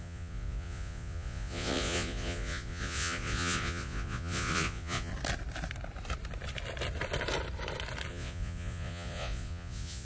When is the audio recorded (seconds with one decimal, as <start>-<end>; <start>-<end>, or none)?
5.1-8.1